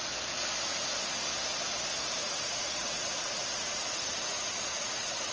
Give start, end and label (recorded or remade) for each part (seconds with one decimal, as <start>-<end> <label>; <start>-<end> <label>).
0.0-2.2 recorded; 2.2-5.3 remade